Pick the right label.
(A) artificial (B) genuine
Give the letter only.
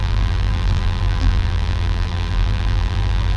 A